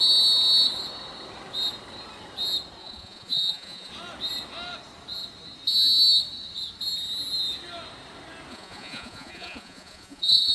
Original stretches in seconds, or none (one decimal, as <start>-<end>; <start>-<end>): 0.0-2.8; 3.9-8.5